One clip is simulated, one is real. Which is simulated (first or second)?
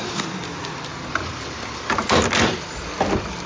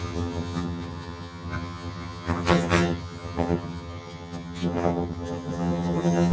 second